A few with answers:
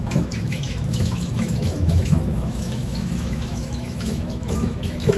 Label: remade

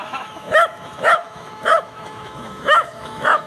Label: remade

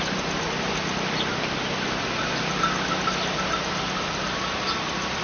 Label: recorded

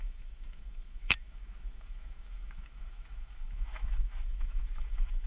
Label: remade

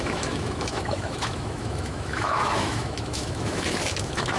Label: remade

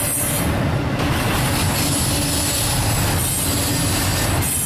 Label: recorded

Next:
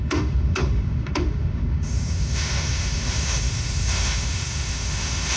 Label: remade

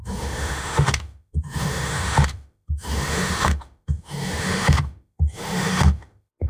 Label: remade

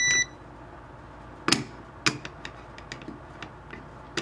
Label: recorded